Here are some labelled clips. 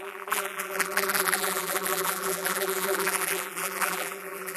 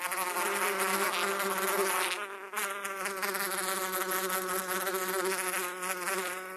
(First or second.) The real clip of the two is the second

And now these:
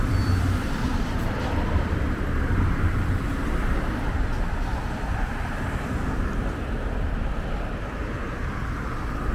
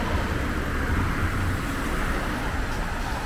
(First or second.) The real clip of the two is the second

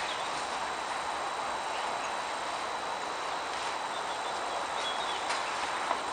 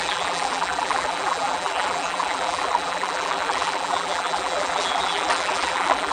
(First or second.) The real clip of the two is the first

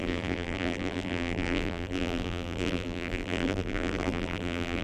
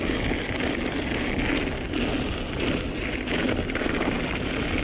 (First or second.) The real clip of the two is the second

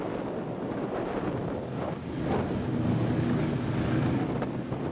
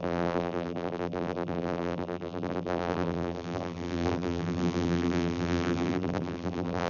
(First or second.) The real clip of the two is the first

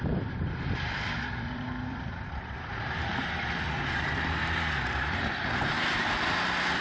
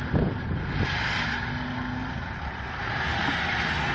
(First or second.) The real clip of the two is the second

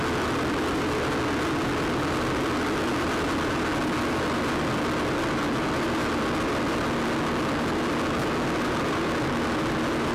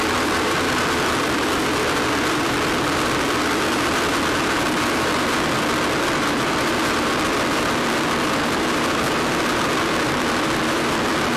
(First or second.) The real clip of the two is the first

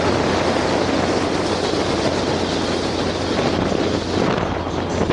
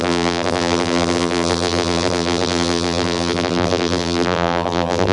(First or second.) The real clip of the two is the first